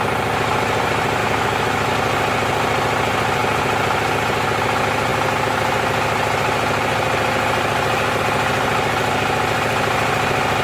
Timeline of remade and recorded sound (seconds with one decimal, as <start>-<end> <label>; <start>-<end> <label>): 0.0-1.2 recorded; 1.2-1.9 remade; 1.9-10.6 recorded